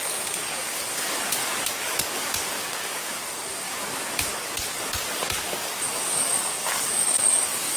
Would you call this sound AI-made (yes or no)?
yes